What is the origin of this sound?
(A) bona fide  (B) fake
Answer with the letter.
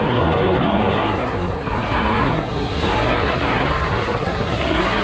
B